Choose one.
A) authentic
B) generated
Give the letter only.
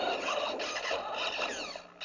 A